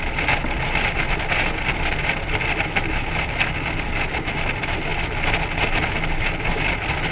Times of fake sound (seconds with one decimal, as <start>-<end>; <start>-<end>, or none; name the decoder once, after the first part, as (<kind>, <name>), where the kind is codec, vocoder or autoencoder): none